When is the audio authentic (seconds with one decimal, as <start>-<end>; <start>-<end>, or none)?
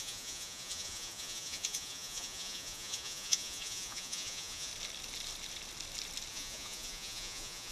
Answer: 4.7-6.3